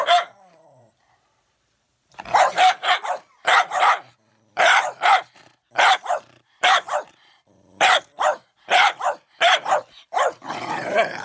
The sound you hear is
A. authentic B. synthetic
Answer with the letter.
B